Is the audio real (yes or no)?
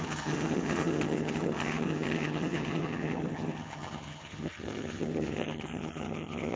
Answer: no